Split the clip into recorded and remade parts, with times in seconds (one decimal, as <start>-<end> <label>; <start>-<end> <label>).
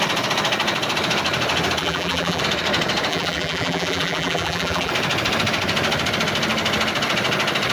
0.0-1.8 recorded; 1.8-2.4 remade; 2.4-3.1 recorded; 3.1-4.9 remade; 4.9-7.7 recorded